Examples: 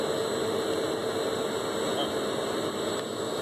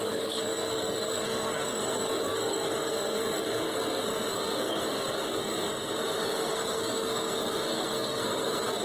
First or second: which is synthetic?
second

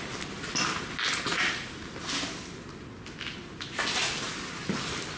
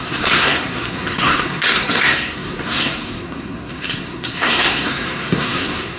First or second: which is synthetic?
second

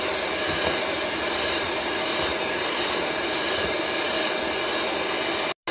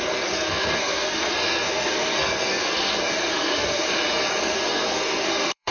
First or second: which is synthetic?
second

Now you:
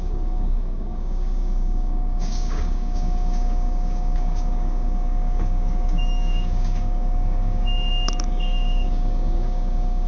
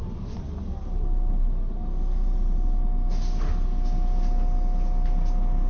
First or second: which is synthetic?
first